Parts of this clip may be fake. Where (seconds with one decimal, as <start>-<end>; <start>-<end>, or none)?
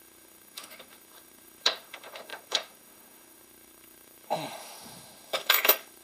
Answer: 0.0-6.0